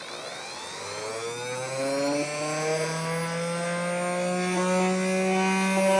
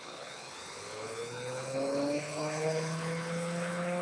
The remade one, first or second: second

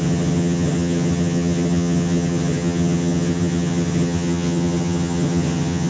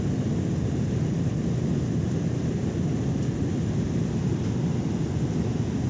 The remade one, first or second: first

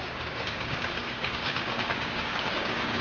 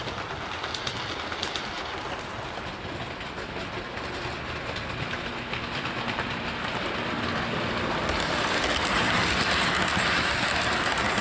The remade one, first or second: first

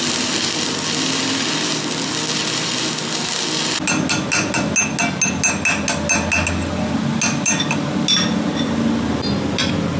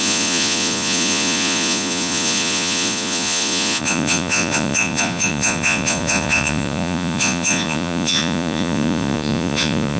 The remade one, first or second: second